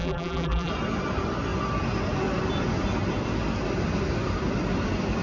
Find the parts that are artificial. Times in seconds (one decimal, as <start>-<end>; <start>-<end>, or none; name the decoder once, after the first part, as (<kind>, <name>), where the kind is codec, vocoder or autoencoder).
0.0-0.7 (vocoder, BigVGAN v2)